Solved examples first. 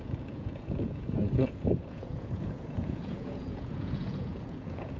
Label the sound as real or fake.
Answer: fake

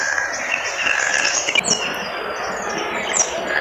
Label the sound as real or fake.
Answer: real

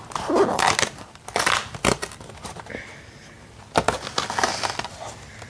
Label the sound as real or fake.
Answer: real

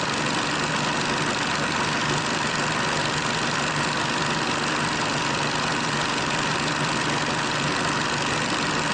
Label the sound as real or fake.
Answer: real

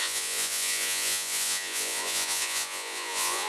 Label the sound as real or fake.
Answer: fake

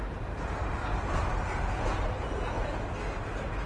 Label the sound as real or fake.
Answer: real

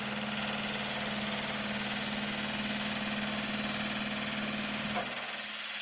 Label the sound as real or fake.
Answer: real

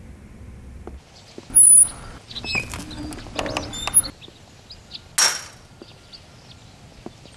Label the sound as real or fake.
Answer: real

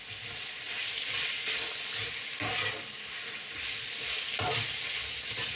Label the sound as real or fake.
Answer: real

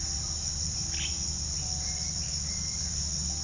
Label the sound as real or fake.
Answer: real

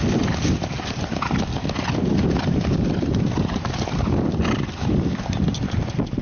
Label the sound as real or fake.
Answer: real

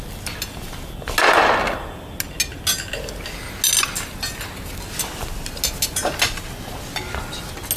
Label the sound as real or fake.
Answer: real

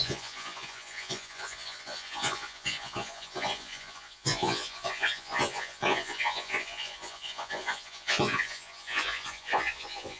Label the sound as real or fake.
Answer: fake